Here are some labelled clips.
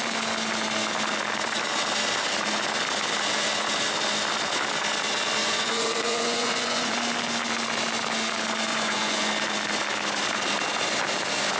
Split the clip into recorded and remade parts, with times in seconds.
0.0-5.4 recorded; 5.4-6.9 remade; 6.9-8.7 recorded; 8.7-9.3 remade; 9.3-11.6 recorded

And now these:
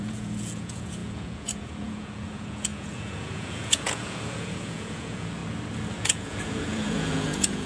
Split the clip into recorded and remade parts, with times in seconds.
0.0-5.4 remade; 5.4-5.9 recorded; 5.9-7.7 remade

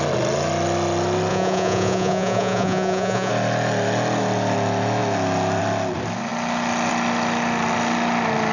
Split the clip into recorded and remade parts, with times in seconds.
0.0-1.3 recorded; 1.3-3.3 remade; 3.3-8.5 recorded

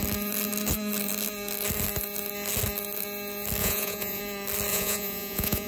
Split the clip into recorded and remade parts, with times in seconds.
0.0-3.6 recorded; 3.6-4.2 remade; 4.2-4.7 recorded; 4.7-5.7 remade

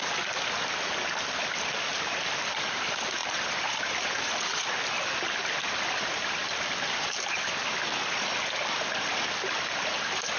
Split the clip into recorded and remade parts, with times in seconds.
0.0-10.4 recorded

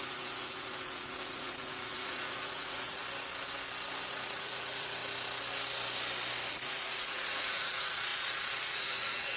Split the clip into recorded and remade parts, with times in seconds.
0.0-3.0 remade; 3.0-4.1 recorded; 4.1-5.0 remade; 5.0-6.5 recorded; 6.5-9.4 remade

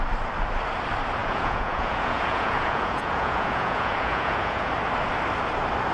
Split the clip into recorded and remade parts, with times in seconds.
0.0-1.2 recorded; 1.2-4.7 remade; 4.7-5.9 recorded

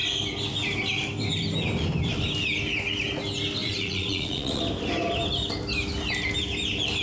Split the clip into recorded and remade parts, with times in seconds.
0.0-3.6 recorded; 3.6-4.6 remade; 4.6-7.0 recorded